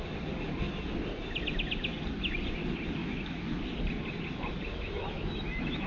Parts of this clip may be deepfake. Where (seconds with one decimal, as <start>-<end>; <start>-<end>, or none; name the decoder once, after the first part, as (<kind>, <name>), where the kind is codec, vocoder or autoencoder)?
3.0-3.5 (autoencoder, DAC-VAE); 4.7-5.9